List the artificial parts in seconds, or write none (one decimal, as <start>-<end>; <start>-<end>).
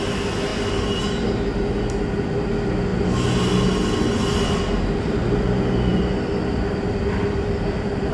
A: 0.5-1.0; 5.9-8.1